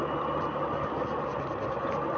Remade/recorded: recorded